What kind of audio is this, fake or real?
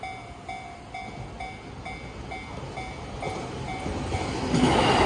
real